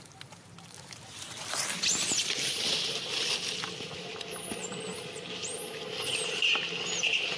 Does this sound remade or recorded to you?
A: recorded